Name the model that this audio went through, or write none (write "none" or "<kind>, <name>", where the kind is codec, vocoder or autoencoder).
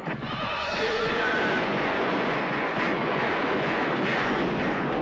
vocoder, Vocos